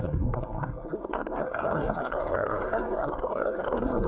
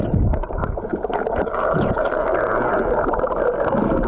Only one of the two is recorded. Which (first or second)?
second